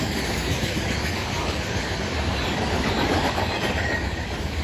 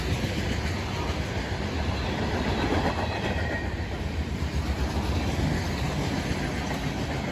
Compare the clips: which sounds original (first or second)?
second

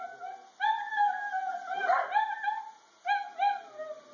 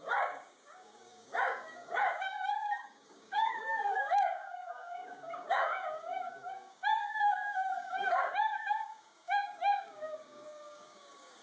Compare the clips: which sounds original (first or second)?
first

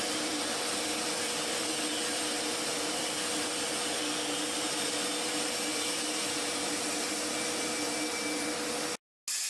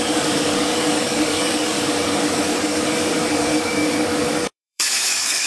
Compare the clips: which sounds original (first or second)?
first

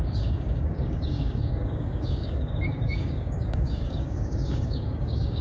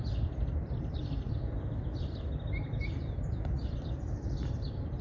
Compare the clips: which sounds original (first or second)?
second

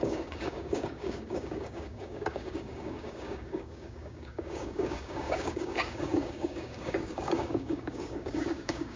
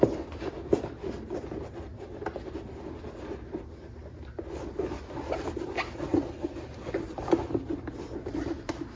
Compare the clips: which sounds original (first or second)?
second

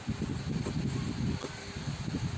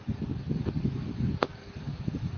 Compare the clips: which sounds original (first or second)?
first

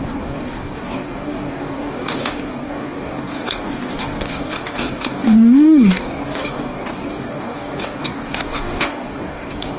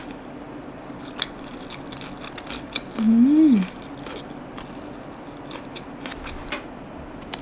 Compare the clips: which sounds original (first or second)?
second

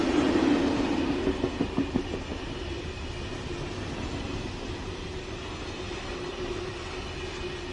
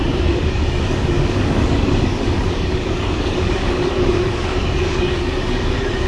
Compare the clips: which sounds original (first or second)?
first